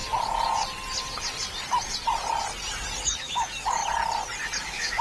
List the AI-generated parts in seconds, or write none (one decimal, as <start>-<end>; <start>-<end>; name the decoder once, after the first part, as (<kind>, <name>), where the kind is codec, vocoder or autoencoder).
3.0-3.8 (autoencoder, DAC-VAE); 4.6-5.0